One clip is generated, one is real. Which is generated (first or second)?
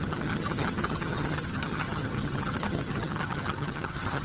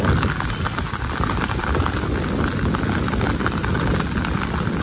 first